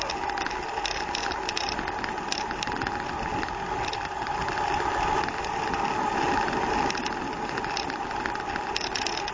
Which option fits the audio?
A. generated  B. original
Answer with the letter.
B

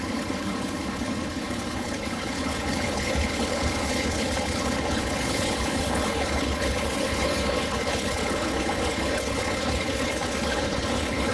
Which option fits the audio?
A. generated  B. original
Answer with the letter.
A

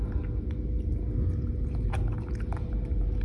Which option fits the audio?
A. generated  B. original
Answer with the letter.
B